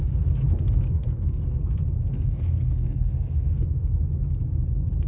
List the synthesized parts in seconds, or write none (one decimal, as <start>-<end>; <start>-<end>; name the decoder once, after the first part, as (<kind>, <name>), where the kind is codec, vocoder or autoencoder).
0.4-1.6 (codec, SNAC); 2.1-3.9